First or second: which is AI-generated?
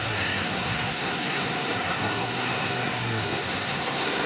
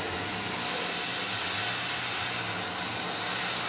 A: first